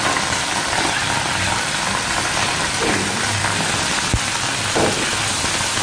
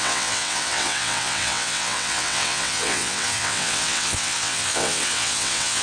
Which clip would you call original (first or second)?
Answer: first